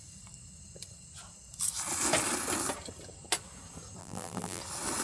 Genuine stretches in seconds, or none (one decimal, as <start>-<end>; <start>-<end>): 0.0-4.0; 4.6-5.0